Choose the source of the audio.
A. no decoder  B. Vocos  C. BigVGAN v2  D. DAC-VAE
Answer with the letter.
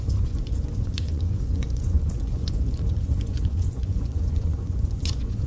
B